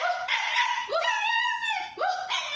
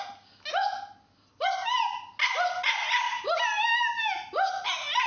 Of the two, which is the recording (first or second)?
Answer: second